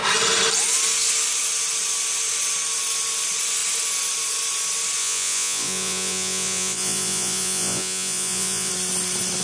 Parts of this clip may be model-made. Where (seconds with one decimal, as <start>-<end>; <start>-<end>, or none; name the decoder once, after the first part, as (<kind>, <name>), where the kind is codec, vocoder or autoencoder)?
5.0-8.7 (vocoder, Vocos)

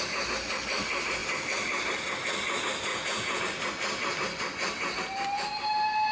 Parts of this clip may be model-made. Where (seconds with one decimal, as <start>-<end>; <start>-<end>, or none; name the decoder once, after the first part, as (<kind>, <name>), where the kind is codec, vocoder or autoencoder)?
2.9-3.4 (vocoder, Vocos)

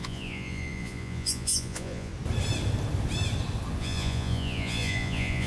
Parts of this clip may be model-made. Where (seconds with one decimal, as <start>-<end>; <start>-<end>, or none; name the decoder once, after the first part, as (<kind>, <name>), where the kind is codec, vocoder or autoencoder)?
0.0-2.1 (vocoder, Vocos); 3.8-5.5